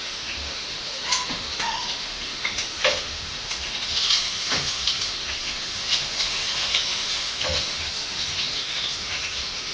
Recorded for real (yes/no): no